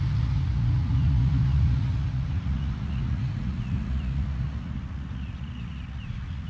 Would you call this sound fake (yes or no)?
yes